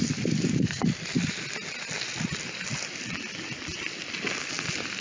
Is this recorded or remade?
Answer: recorded